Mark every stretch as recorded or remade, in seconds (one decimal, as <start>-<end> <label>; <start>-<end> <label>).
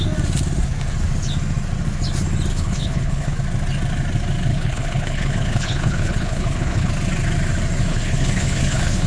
0.0-2.5 recorded; 2.5-3.3 remade; 3.3-4.5 recorded; 4.5-6.9 remade; 6.9-7.9 recorded; 7.9-9.1 remade